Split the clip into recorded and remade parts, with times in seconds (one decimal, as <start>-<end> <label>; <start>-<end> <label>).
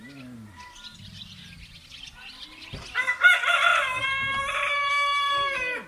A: 0.0-3.7 recorded; 3.7-4.9 remade; 4.9-5.9 recorded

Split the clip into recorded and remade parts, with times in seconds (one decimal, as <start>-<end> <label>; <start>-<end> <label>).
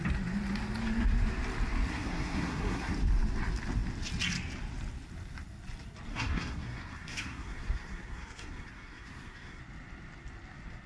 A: 0.0-1.9 recorded; 1.9-2.9 remade; 2.9-6.1 recorded; 6.1-9.6 remade; 9.6-10.9 recorded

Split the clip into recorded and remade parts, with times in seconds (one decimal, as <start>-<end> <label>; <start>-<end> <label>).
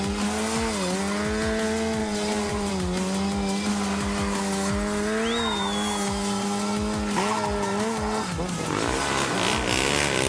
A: 0.0-2.0 recorded; 2.0-2.7 remade; 2.7-10.3 recorded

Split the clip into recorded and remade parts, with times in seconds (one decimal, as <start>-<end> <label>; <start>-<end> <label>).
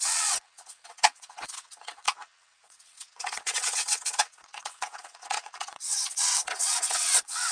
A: 0.0-7.5 remade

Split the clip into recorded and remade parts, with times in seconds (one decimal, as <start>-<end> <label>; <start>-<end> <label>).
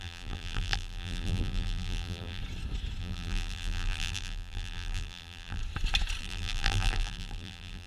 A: 0.0-2.4 remade; 2.4-3.0 recorded; 3.0-5.6 remade; 5.6-6.2 recorded; 6.2-7.9 remade